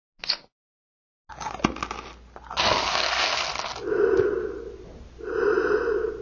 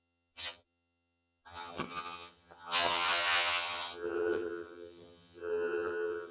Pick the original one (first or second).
first